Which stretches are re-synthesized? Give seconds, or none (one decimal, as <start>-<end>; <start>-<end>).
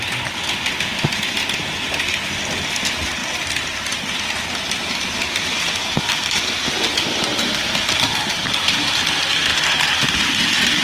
7.3-9.0